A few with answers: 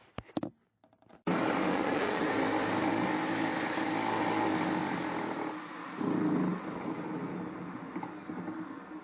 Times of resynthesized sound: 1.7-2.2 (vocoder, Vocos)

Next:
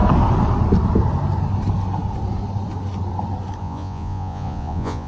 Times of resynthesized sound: 3.6-5.1 (vocoder, Vocos)

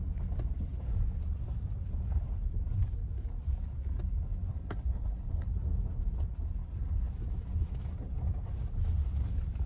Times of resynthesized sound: 4.5-5.5 (codec, HILCodec); 6.6-7.1

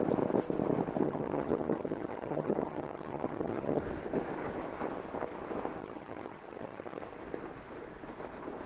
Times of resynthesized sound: 1.0-3.8 (vocoder, HiFi-GAN); 5.8-7.0